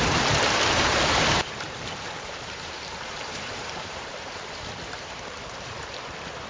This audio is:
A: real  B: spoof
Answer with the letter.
B